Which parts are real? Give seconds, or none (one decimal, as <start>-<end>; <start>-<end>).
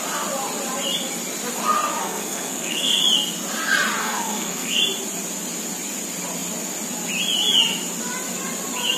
0.0-2.0; 3.0-4.0; 4.8-9.0